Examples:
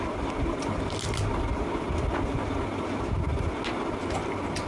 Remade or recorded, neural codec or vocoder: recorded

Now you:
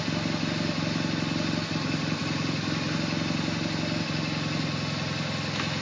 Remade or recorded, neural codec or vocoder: recorded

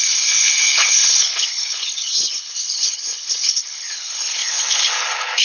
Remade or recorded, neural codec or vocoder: remade, codec, HILCodec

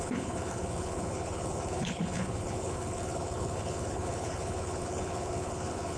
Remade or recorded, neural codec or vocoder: remade, codec, HILCodec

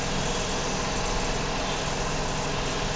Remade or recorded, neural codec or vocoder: recorded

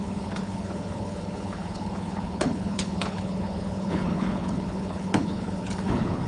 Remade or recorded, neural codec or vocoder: remade, codec, HILCodec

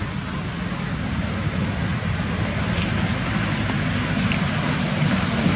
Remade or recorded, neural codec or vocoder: recorded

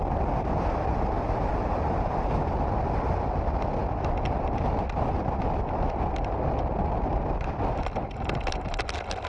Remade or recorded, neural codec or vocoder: recorded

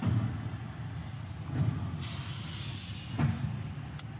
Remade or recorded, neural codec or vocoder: recorded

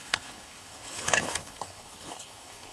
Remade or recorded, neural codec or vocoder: remade, codec, HILCodec